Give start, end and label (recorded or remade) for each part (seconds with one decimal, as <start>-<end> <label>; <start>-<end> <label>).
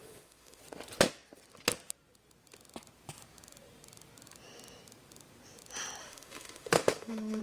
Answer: 0.0-0.6 remade; 0.6-6.0 recorded; 6.0-7.4 remade